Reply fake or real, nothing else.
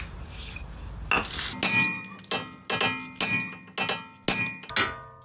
real